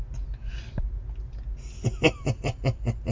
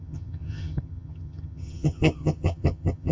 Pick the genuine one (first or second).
first